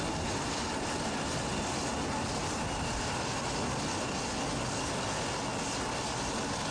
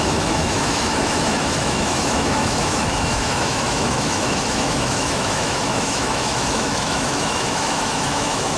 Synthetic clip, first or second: second